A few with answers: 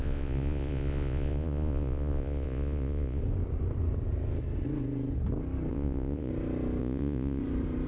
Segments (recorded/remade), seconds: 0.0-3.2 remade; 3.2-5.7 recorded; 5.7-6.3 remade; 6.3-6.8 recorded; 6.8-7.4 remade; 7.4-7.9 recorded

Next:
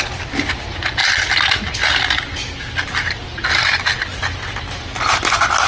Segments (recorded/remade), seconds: 0.0-5.7 recorded

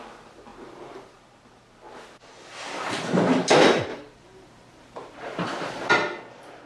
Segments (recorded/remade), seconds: 0.0-0.5 recorded; 0.5-1.2 remade; 1.2-3.9 recorded; 3.9-5.9 remade; 5.9-6.7 recorded

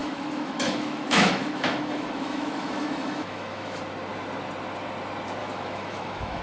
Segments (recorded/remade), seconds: 0.0-3.8 remade; 3.8-5.4 recorded; 5.4-6.4 remade